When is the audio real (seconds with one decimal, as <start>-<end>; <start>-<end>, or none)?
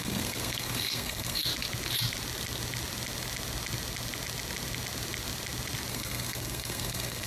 1.5-5.9